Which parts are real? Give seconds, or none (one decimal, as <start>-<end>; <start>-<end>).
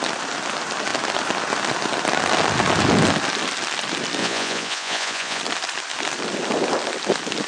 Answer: 0.0-4.2; 5.4-7.5